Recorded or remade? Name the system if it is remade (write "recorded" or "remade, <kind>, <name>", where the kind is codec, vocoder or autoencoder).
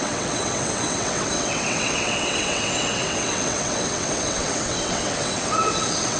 remade, vocoder, WaveNeXt